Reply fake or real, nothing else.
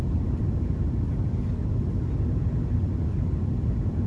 real